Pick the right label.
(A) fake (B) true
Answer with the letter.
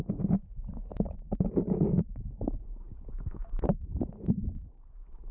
A